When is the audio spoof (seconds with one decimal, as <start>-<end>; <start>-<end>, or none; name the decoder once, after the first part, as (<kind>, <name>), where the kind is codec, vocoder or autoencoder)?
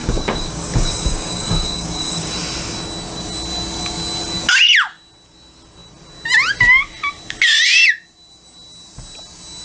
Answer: 0.0-2.3 (codec, DAC)